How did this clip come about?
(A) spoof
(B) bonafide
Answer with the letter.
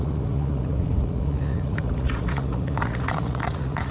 A